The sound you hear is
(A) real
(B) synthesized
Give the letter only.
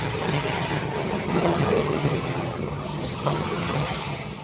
B